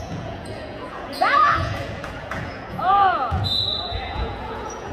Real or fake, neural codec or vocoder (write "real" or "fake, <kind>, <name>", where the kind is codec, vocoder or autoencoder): fake, vocoder, Vocos